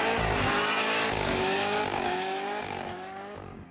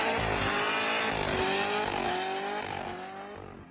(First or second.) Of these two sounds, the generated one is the first